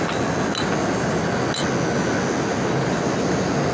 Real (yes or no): yes